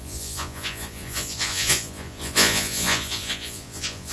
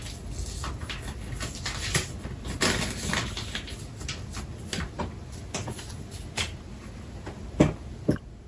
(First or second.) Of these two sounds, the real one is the second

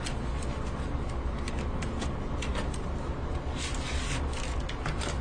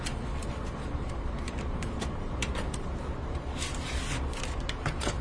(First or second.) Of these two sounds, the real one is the first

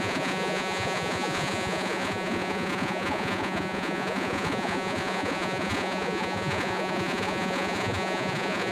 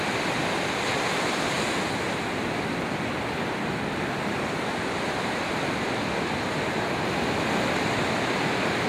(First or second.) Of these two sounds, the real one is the second